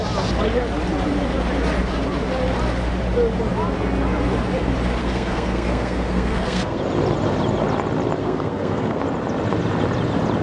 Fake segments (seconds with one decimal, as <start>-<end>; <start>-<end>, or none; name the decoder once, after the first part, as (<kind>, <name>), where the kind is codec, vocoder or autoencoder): 5.0-6.8 (codec, SNAC); 8.2-9.0